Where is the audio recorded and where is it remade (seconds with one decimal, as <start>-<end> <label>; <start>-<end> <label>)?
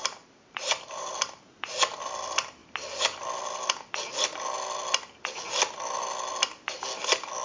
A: 0.0-1.7 remade; 1.7-7.4 recorded